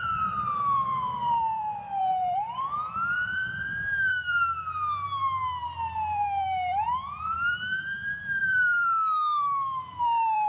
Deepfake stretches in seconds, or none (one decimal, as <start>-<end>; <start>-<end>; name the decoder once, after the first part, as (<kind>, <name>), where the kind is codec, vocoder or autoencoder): 0.0-3.4 (vocoder, BigVGAN v2); 4.0-10.5